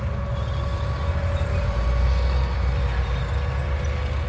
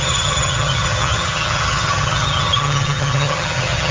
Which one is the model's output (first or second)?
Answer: second